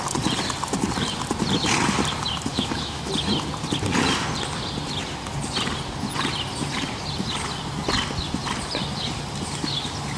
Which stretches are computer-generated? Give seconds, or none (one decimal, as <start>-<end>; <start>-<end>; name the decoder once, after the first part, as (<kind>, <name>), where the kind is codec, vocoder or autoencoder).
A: 2.5-3.1 (autoencoder, DAC-VAE)